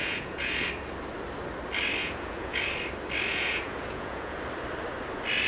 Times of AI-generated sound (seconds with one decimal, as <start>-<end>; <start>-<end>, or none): 0.0-0.5; 2.0-2.7; 3.3-4.4